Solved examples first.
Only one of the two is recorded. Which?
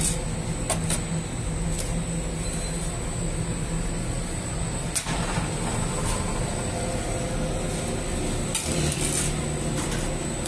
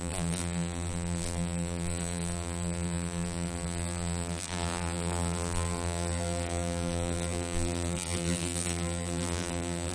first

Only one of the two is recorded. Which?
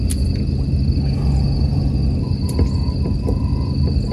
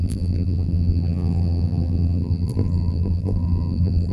first